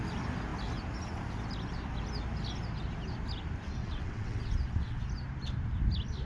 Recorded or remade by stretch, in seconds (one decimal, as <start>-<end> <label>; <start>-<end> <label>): 0.0-3.8 recorded; 3.8-5.0 remade; 5.0-6.3 recorded